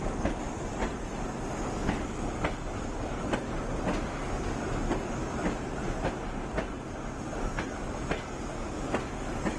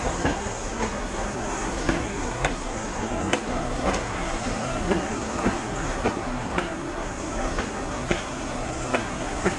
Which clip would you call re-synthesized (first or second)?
second